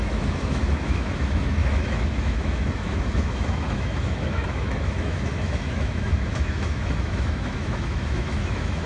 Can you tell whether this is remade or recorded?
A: remade